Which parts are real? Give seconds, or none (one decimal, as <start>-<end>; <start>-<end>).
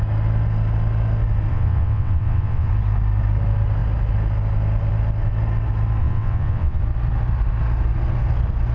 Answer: 0.0-1.5; 2.7-6.0; 6.8-8.7